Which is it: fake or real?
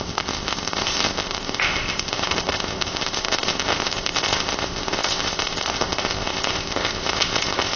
fake